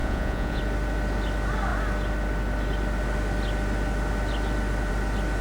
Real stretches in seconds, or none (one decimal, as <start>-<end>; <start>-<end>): 0.6-5.4